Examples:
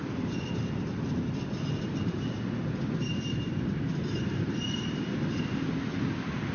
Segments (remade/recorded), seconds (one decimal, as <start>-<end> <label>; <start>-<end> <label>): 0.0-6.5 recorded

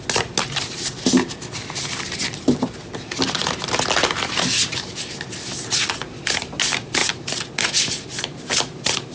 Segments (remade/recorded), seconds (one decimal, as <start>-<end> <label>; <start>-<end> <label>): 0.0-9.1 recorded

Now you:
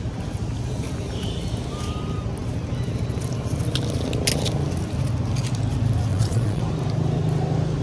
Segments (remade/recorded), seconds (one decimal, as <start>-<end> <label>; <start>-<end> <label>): 0.0-6.1 recorded; 6.1-6.6 remade; 6.6-7.8 recorded

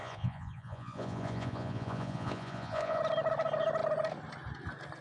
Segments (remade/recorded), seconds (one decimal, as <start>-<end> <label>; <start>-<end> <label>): 0.0-3.0 remade; 3.0-5.0 recorded

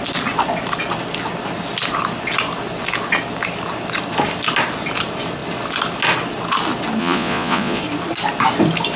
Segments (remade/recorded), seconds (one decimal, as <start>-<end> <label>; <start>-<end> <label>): 0.0-7.0 recorded; 7.0-7.8 remade; 7.8-9.0 recorded

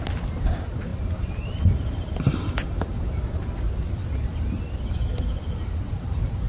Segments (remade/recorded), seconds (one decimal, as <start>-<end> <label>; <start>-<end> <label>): 0.0-6.5 recorded

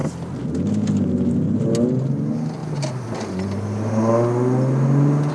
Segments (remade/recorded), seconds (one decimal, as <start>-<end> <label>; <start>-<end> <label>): 0.0-5.3 recorded

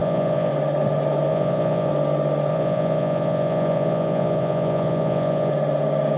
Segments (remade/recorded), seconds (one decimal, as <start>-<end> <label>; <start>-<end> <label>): 0.0-0.5 remade; 0.5-1.3 recorded; 1.3-1.9 remade; 1.9-2.5 recorded; 2.5-5.5 remade; 5.5-6.2 recorded